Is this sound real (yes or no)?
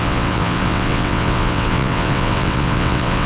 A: no